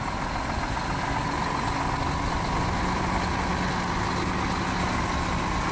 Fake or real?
real